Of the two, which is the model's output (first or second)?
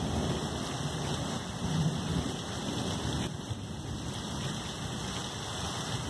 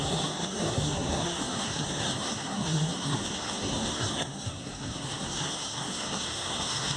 second